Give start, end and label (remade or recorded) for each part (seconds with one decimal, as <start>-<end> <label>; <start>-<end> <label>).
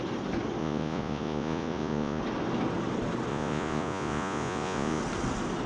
0.0-0.6 recorded; 0.6-2.2 remade; 2.2-3.3 recorded; 3.3-5.0 remade; 5.0-5.7 recorded